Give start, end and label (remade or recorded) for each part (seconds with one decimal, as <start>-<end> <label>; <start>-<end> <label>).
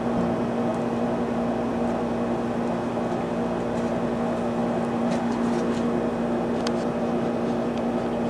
0.0-8.3 recorded